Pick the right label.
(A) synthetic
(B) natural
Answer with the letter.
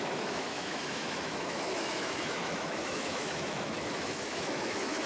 A